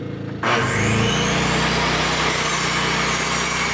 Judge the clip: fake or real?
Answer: real